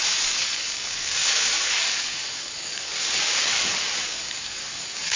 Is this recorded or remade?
remade